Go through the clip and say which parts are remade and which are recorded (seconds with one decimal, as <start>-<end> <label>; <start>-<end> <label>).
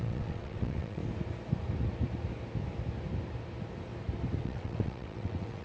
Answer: 0.0-1.0 remade; 1.0-4.4 recorded; 4.4-5.6 remade